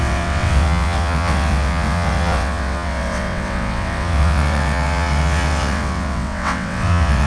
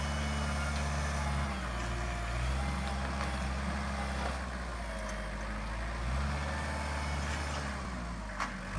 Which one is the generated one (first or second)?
first